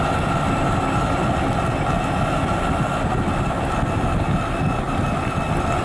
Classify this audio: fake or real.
real